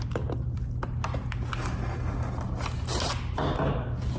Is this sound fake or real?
real